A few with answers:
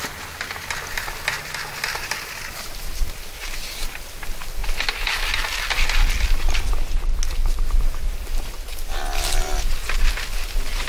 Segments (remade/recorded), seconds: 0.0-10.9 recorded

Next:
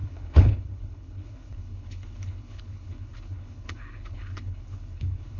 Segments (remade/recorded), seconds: 0.0-5.4 remade